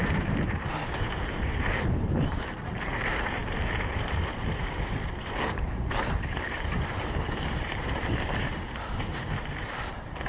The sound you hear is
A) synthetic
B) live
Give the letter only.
A